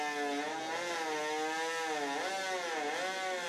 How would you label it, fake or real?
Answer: real